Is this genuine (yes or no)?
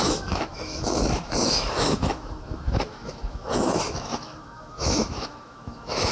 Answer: no